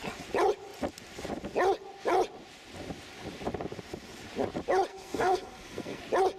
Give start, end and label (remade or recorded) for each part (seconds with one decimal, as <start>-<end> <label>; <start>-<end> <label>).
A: 0.0-4.9 recorded; 4.9-6.0 remade; 6.0-6.4 recorded